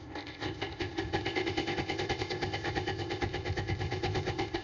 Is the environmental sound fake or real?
fake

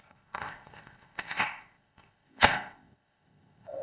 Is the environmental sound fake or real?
fake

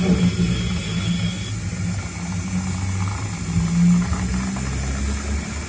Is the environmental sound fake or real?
real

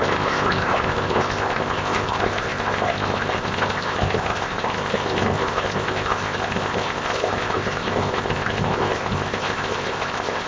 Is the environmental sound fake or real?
fake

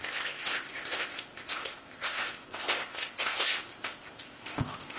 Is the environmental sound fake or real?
fake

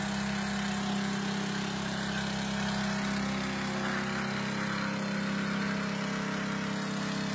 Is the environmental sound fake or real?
real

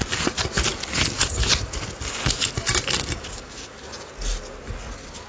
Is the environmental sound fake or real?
real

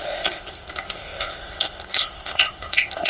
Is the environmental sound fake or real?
fake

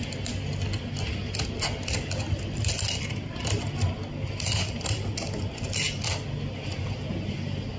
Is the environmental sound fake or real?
real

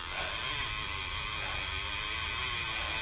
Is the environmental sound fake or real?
real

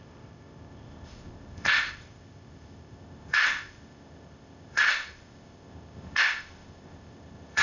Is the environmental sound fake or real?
fake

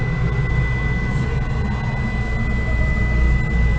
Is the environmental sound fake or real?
real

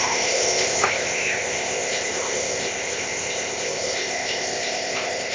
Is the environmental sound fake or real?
fake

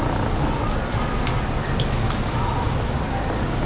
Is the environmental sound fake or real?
real